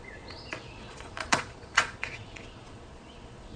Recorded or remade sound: remade